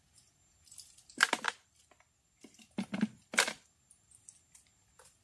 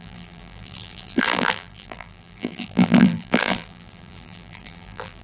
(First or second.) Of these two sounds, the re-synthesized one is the second